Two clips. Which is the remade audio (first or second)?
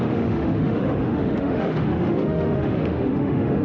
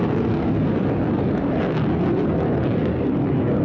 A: first